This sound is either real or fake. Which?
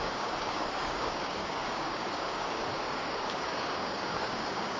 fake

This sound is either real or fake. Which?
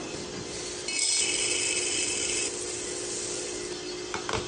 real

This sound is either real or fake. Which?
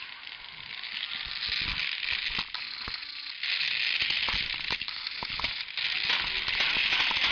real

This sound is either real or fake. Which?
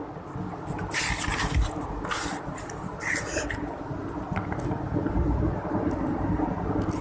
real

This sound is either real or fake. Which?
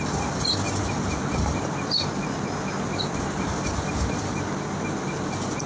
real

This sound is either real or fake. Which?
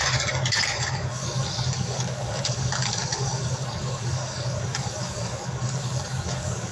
fake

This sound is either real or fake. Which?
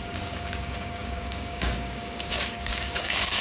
fake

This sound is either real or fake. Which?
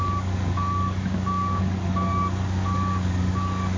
fake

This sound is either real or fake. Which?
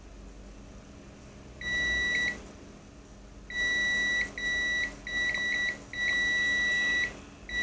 real